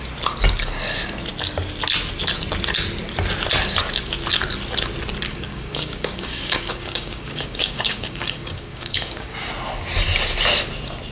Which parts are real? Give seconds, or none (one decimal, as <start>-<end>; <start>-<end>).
0.0-5.3; 9.5-11.1